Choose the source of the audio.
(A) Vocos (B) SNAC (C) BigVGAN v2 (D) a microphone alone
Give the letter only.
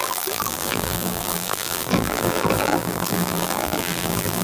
C